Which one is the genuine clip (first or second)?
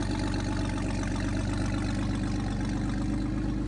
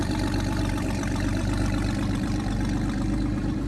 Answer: first